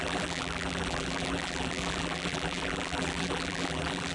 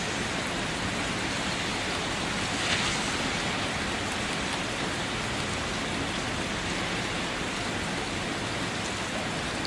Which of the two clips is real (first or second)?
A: second